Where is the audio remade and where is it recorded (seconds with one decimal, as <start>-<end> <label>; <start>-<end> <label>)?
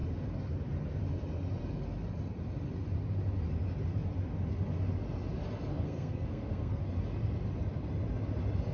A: 0.0-5.7 recorded; 5.7-6.8 remade; 6.8-8.7 recorded